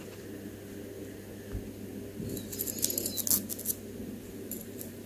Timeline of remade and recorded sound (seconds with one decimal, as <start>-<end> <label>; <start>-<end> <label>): 0.0-4.0 recorded; 4.0-5.1 remade